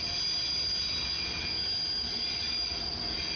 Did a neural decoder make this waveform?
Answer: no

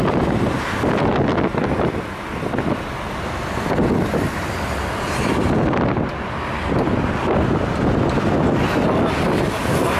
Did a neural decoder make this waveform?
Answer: no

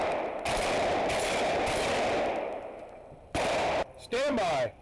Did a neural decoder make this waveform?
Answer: yes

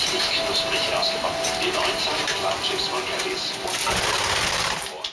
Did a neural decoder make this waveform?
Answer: no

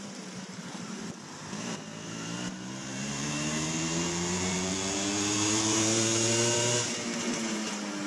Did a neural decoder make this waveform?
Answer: yes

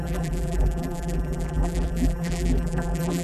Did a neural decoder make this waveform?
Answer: yes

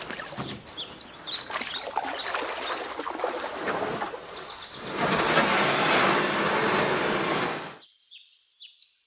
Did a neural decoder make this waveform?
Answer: no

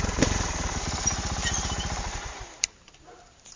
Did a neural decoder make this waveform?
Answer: yes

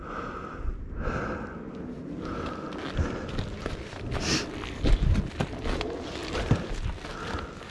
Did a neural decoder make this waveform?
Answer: no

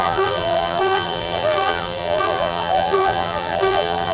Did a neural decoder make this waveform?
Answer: yes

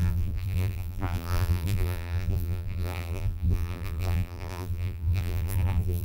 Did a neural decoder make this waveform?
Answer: yes